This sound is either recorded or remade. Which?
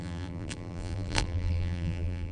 remade